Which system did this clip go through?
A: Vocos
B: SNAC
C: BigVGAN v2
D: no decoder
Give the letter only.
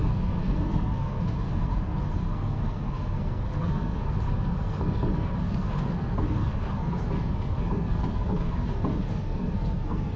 B